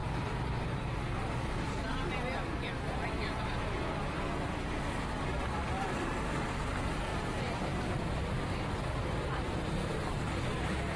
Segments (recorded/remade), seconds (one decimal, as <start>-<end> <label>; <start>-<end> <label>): 0.0-1.8 remade; 1.8-2.9 recorded; 2.9-11.0 remade